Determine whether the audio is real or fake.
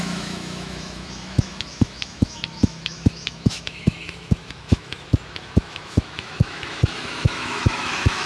fake